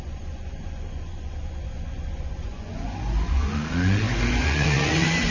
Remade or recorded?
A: remade